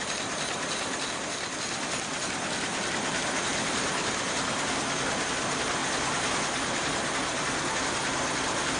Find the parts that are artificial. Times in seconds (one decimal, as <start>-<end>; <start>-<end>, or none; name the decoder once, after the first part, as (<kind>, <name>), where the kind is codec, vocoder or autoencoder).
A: none